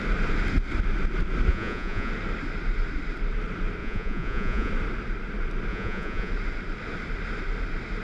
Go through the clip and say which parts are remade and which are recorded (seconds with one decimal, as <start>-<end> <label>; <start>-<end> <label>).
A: 0.0-1.5 recorded; 1.5-2.1 remade; 2.1-3.8 recorded; 3.8-4.7 remade; 4.7-5.7 recorded; 5.7-6.3 remade; 6.3-8.0 recorded